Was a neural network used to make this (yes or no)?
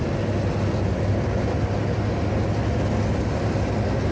no